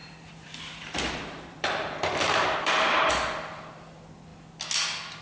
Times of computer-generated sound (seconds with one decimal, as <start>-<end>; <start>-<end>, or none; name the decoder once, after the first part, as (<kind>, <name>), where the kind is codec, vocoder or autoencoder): 0.0-3.1 (vocoder, BigVGAN v2)

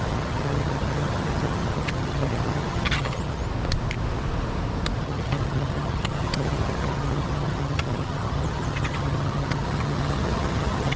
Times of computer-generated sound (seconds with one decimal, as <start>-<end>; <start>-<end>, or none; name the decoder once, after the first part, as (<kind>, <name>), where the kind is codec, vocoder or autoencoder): 0.0-3.4 (vocoder, HiFi-GAN); 5.0-11.0

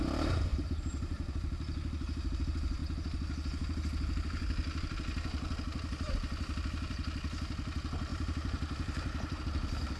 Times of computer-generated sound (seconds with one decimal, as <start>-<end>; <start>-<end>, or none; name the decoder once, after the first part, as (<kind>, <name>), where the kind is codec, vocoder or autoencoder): 0.5-1.3 (vocoder, BigVGAN v2); 8.1-9.4

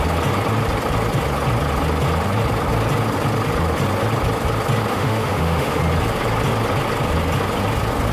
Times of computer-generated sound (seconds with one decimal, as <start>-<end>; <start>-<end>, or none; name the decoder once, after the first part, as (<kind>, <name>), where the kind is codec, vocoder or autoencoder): 4.9-5.8 (autoencoder, DAC-VAE)